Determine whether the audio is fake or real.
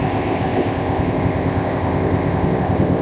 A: fake